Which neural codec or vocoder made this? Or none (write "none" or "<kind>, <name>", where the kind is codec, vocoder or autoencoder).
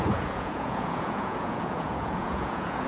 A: vocoder, Vocos